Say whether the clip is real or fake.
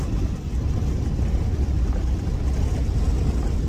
real